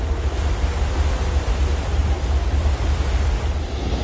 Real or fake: real